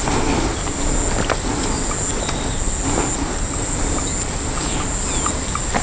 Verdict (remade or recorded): recorded